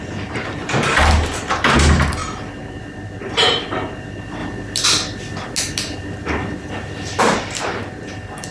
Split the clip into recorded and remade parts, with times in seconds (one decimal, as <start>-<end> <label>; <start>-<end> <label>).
0.0-2.2 recorded; 2.2-2.8 remade; 2.8-8.5 recorded